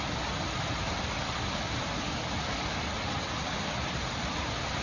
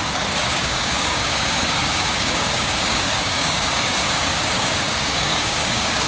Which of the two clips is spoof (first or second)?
second